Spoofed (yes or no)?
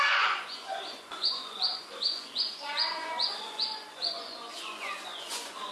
yes